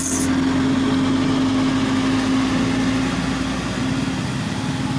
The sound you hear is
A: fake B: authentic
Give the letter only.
B